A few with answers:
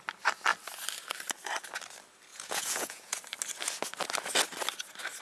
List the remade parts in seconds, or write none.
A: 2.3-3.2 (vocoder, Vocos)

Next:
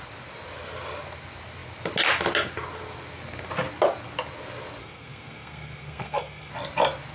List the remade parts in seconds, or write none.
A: 4.8-6.5 (codec, SNAC)

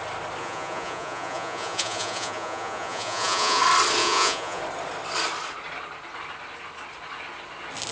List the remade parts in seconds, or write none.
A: 0.4-3.6 (vocoder, Vocos); 4.0-4.6

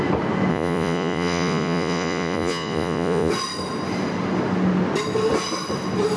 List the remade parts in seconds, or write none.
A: 0.5-3.3 (vocoder, Vocos)

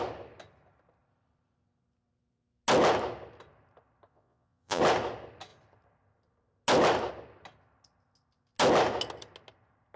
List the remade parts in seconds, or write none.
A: 4.1-4.8 (vocoder, Vocos)